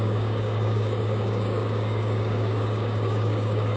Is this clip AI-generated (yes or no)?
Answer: yes